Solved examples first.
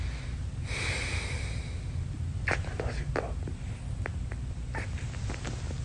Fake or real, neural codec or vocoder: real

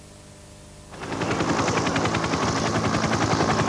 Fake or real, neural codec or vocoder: real